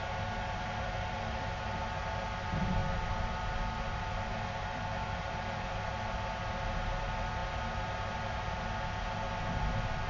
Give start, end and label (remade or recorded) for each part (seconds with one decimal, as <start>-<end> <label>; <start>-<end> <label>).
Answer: 0.0-10.1 recorded

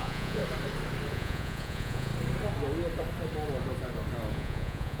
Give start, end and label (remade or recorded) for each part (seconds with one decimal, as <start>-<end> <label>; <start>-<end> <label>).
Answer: 0.0-0.4 remade; 0.4-1.1 recorded; 1.1-2.1 remade; 2.1-4.3 recorded; 4.3-5.0 remade

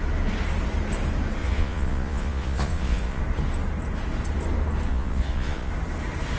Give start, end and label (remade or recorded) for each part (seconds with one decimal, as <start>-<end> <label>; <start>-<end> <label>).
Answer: 0.0-1.4 recorded; 1.4-3.2 remade; 3.2-4.9 recorded; 4.9-5.7 remade; 5.7-6.4 recorded

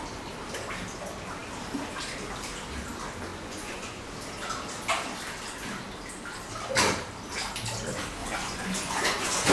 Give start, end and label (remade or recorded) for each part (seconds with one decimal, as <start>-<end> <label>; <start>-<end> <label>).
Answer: 0.0-3.3 recorded; 3.3-4.1 remade; 4.1-8.2 recorded; 8.2-9.5 remade

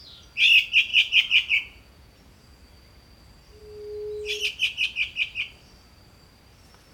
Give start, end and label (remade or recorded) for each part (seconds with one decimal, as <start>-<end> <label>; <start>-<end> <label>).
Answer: 0.0-0.9 recorded; 0.9-2.6 remade; 2.6-6.9 recorded

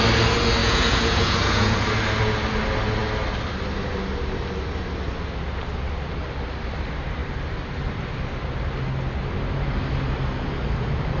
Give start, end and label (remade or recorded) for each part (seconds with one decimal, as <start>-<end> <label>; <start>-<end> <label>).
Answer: 0.0-0.6 recorded; 0.6-1.8 remade; 1.8-11.2 recorded

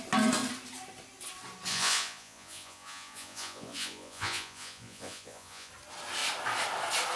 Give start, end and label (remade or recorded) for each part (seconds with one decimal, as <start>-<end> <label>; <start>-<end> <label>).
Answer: 0.0-1.7 recorded; 1.7-5.7 remade; 5.7-7.2 recorded